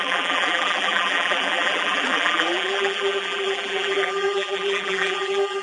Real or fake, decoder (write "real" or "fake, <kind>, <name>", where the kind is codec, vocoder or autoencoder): fake, vocoder, BigVGAN v2